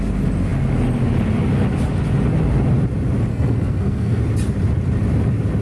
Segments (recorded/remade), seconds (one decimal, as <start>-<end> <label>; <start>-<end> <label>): 0.0-3.3 recorded; 3.3-4.2 remade; 4.2-5.6 recorded